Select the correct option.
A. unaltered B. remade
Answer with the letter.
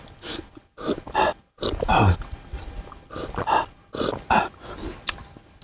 A